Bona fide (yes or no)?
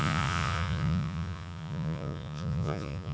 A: no